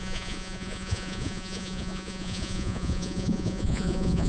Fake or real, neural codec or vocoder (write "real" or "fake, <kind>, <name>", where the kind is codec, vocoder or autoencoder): fake, vocoder, Vocos